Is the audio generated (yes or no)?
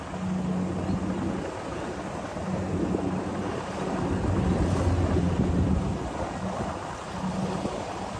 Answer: no